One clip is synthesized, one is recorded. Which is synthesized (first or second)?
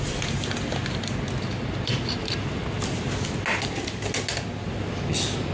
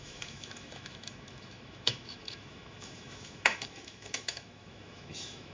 second